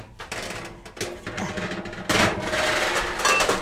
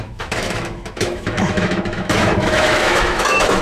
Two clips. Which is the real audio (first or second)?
first